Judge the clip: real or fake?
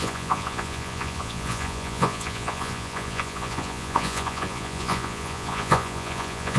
fake